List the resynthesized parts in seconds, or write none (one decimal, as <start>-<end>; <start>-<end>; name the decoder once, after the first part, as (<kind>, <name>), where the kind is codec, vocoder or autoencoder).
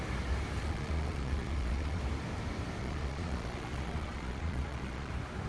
0.6-2.0 (vocoder, Vocos); 2.8-5.1